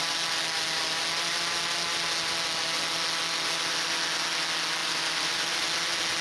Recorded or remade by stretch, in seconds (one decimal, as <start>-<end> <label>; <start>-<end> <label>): 0.0-4.8 recorded; 4.8-5.6 remade; 5.6-6.2 recorded